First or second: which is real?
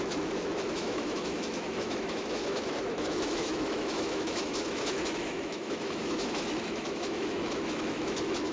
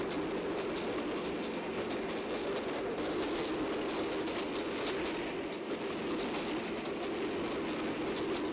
second